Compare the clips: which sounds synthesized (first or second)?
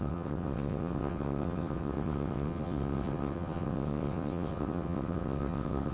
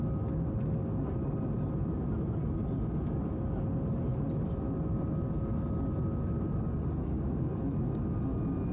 first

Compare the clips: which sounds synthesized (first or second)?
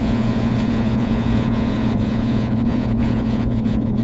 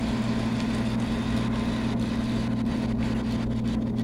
first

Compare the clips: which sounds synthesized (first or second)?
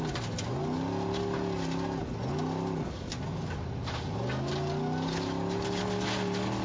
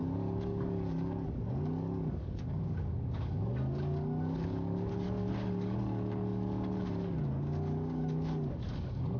second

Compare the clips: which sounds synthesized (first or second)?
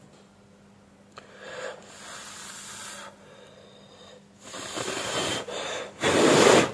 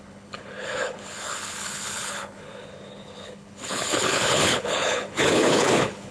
second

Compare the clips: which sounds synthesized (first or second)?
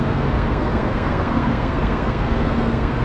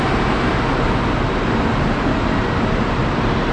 first